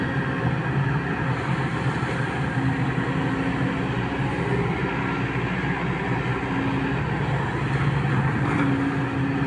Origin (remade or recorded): recorded